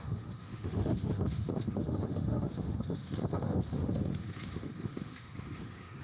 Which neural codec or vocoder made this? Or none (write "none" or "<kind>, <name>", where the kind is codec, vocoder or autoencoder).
autoencoder, DAC-VAE